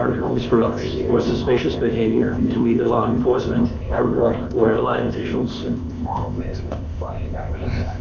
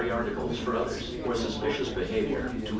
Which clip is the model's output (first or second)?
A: first